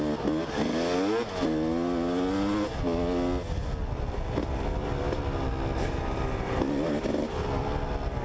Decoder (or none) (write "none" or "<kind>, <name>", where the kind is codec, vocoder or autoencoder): none